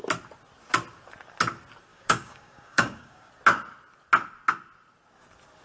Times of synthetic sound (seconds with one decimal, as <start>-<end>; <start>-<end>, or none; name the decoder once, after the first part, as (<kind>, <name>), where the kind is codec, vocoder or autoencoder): 1.9-3.3 (codec, DAC)